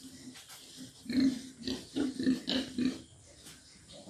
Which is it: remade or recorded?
remade